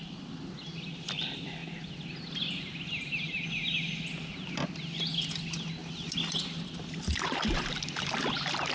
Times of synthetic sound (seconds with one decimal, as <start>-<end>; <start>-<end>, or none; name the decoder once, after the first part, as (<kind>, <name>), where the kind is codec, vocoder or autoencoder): 5.8-8.1 (vocoder, BigVGAN v2)